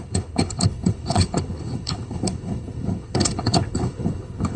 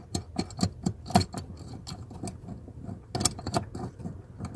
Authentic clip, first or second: second